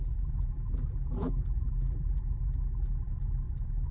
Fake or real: fake